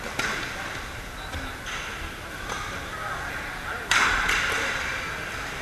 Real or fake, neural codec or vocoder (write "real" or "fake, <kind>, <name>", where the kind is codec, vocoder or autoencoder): real